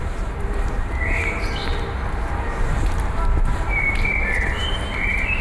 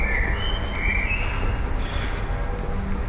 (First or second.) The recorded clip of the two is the second